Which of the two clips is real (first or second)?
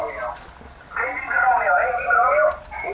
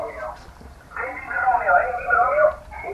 first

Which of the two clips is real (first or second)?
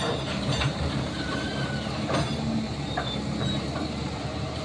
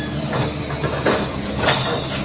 second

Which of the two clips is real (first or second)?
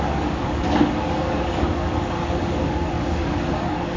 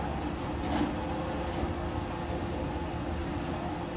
second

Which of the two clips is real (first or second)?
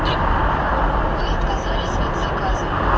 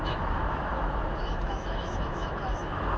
first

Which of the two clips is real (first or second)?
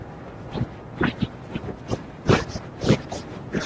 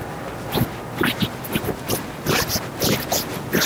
second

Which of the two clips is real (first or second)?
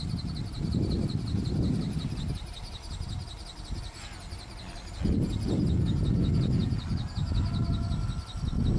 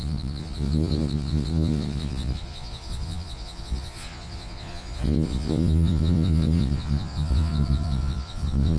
first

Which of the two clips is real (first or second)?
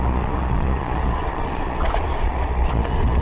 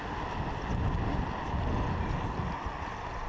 second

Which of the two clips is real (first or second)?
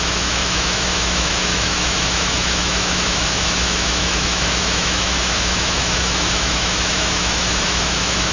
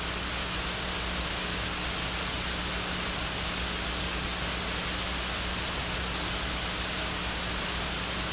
second